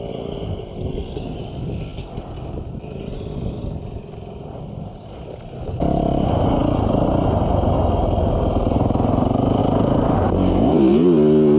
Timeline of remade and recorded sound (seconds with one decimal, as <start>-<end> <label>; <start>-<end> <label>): 0.0-11.6 recorded